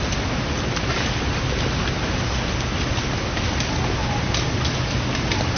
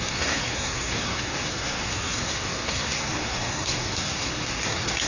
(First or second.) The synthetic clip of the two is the second